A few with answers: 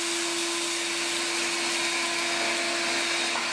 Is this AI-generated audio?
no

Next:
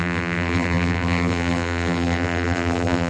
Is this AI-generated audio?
yes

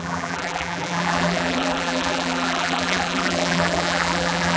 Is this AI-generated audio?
yes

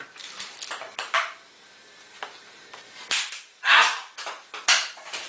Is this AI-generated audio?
yes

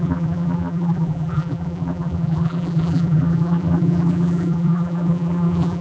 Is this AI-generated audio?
yes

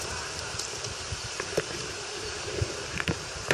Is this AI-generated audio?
yes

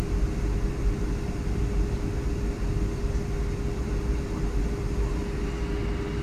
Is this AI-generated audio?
no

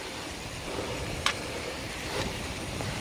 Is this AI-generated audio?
yes